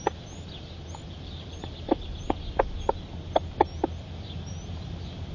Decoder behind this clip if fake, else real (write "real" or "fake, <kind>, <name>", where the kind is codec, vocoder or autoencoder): real